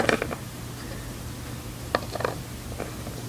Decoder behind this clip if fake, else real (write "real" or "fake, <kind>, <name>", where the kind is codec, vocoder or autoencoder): real